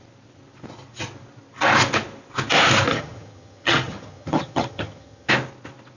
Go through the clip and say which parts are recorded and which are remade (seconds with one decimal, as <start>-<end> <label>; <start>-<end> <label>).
0.0-2.9 recorded; 2.9-5.3 remade; 5.3-6.0 recorded

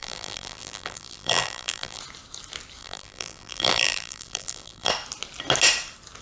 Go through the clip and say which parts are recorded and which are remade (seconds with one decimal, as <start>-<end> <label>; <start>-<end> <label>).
0.0-2.0 remade; 2.0-2.8 recorded; 2.8-4.9 remade; 4.9-6.2 recorded

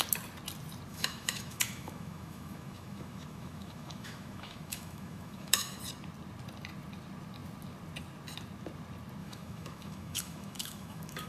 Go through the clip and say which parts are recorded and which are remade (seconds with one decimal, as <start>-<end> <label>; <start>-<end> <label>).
0.0-0.9 recorded; 0.9-5.8 remade; 5.8-9.2 recorded; 9.2-11.3 remade

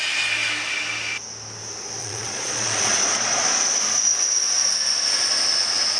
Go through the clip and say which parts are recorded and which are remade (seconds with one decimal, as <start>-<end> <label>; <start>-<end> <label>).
0.0-2.0 recorded; 2.0-3.8 remade; 3.8-6.0 recorded

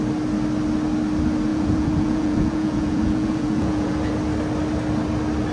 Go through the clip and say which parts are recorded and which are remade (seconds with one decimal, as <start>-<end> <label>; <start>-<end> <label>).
0.0-1.5 recorded; 1.5-4.1 remade; 4.1-5.5 recorded

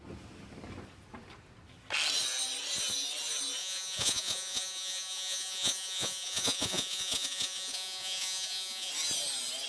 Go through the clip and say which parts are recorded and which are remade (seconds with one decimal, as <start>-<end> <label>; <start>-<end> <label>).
0.0-3.6 recorded; 3.6-8.9 remade; 8.9-9.7 recorded